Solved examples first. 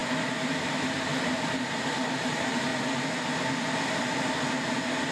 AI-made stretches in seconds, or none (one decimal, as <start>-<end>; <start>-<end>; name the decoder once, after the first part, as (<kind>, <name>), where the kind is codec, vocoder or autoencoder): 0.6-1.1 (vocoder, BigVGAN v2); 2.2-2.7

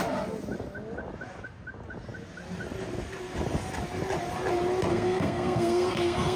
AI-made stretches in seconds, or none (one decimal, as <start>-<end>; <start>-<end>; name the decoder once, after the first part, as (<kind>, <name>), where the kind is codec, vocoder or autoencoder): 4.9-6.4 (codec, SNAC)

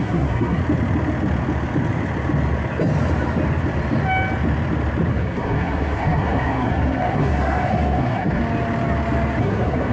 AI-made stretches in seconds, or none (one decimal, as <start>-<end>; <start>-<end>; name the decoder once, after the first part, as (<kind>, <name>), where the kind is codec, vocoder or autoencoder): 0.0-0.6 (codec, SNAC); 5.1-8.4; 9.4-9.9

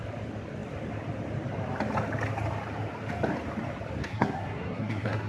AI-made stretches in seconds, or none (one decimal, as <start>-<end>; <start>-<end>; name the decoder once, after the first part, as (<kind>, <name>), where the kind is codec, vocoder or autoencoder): 4.0-5.3 (codec, SNAC)

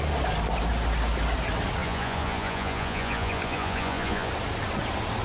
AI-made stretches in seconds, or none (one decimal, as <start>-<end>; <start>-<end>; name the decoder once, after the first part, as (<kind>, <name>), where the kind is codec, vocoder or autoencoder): 1.8-4.3 (vocoder, Vocos)